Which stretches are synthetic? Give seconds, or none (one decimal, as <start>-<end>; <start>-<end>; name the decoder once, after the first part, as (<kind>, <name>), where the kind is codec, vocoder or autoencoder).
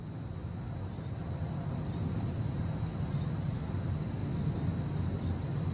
0.0-4.2 (vocoder, BigVGAN v2); 5.0-5.7